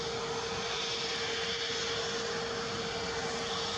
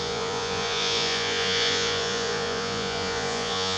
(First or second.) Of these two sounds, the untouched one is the first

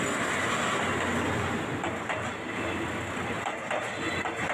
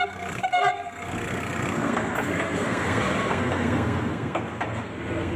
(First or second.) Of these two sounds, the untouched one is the first